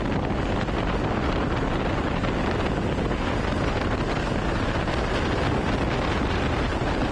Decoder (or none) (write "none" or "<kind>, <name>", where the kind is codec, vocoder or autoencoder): none